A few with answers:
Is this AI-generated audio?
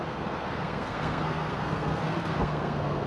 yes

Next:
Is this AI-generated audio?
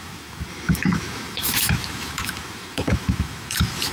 yes